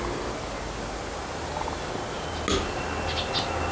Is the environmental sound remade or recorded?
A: recorded